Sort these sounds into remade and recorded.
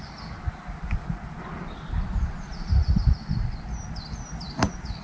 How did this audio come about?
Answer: recorded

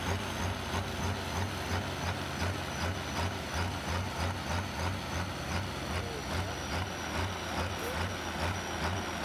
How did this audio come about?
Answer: recorded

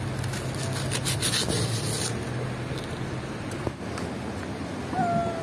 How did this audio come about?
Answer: recorded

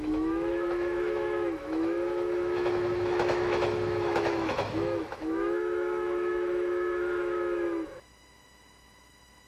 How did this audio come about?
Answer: remade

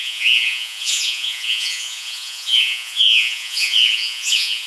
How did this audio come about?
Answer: remade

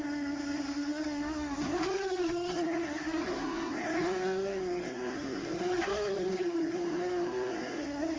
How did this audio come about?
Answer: remade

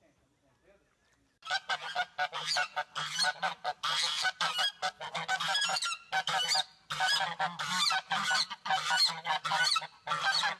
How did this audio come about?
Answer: recorded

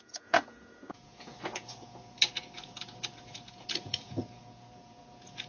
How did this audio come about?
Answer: remade